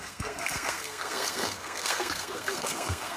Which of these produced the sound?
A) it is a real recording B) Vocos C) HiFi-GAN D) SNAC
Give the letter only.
D